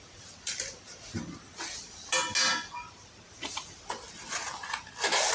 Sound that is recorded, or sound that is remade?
recorded